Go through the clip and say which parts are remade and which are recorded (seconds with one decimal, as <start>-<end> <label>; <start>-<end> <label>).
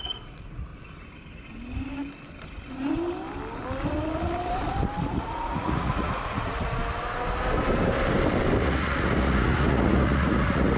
0.0-0.7 remade; 0.7-5.1 recorded; 5.1-6.8 remade; 6.8-8.6 recorded; 8.6-10.8 remade